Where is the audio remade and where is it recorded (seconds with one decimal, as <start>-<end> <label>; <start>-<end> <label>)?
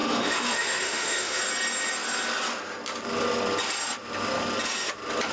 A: 0.0-1.4 remade; 1.4-5.3 recorded